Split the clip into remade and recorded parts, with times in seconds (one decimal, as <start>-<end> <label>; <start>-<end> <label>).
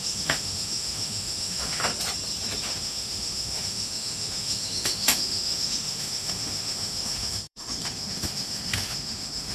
0.0-1.9 remade; 1.9-2.6 recorded; 2.6-9.5 remade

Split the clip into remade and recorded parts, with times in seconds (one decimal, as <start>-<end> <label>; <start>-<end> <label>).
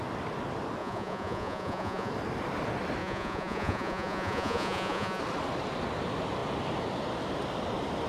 0.0-0.8 recorded; 0.8-2.1 remade; 2.1-3.0 recorded; 3.0-5.2 remade; 5.2-8.1 recorded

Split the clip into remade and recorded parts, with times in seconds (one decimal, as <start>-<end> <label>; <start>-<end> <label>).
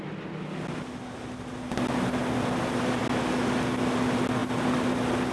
0.0-5.3 recorded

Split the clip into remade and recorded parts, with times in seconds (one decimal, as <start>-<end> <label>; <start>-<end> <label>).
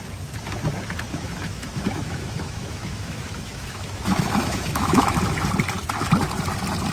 0.0-1.1 recorded; 1.1-5.2 remade; 5.2-6.9 recorded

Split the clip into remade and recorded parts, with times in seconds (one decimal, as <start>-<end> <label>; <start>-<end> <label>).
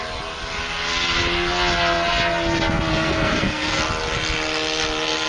0.0-2.9 recorded; 2.9-3.8 remade; 3.8-5.3 recorded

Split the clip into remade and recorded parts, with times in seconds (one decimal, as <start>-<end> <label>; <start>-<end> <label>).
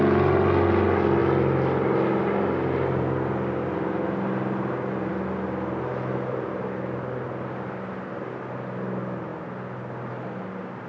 0.0-10.9 recorded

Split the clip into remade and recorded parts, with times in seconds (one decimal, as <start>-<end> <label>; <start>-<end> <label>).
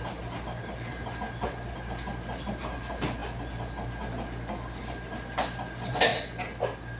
0.0-7.0 recorded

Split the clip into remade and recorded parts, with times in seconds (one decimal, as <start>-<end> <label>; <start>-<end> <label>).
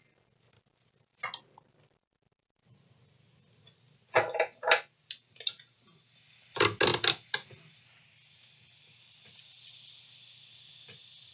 0.0-11.3 recorded